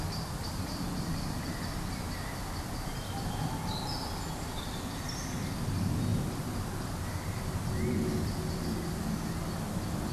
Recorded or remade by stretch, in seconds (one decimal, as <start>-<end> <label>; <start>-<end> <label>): 0.0-10.1 recorded